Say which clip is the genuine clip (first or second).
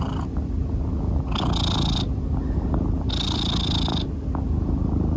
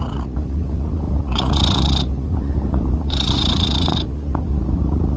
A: first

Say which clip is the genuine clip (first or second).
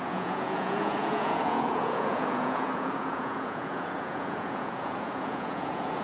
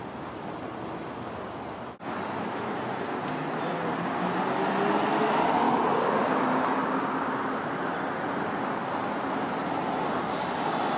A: second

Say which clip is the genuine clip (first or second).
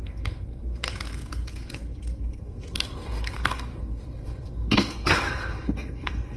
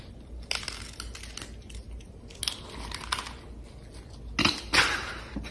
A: second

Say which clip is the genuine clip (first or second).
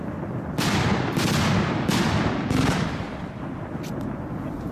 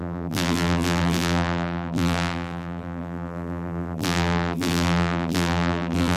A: first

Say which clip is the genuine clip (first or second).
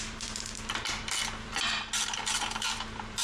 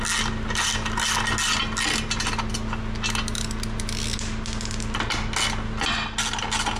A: second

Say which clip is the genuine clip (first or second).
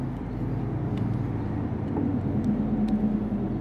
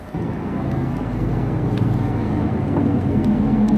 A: first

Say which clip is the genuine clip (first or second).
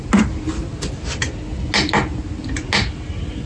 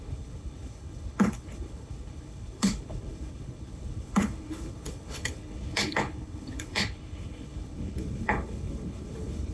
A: first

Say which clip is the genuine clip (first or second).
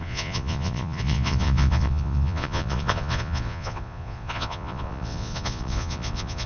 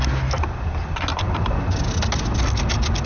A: second